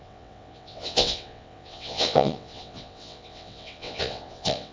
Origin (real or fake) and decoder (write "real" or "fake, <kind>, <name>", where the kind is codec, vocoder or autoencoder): fake, vocoder, WaveNeXt